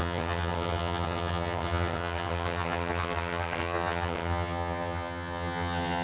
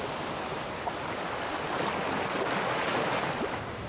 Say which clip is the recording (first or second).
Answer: second